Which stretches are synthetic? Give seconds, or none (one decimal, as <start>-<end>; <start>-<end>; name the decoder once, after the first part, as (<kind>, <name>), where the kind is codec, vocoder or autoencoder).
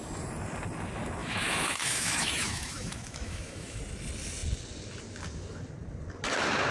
1.2-3.8 (autoencoder, DAC-VAE)